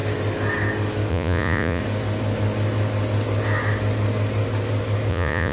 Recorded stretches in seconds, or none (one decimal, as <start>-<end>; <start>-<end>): 0.0-1.1; 1.8-5.1